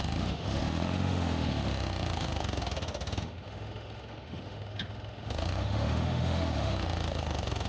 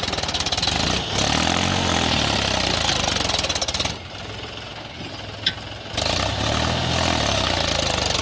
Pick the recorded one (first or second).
second